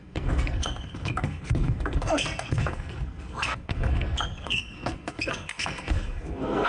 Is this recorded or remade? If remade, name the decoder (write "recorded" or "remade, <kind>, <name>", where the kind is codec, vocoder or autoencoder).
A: remade, codec, SNAC